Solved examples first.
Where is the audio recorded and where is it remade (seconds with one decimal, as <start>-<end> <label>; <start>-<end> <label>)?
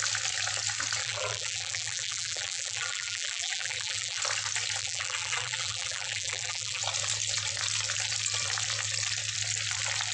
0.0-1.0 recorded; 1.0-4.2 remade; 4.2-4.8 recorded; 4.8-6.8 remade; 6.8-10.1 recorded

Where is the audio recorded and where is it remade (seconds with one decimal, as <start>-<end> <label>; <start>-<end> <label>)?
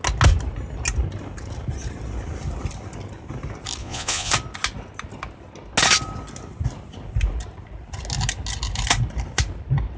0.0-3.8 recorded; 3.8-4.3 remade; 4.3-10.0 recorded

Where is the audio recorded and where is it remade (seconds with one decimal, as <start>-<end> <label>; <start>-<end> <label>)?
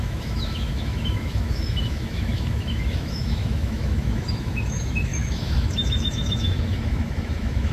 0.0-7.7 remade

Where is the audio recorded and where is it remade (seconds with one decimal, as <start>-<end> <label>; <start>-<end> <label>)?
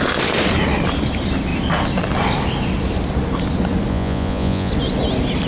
0.0-3.9 recorded; 3.9-4.7 remade; 4.7-5.5 recorded